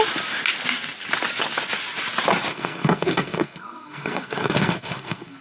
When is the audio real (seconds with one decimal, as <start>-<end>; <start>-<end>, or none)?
0.0-2.5